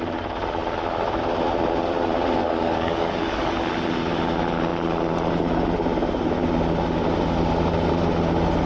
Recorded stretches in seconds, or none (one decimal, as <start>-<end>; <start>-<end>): 0.0-2.4; 3.6-8.7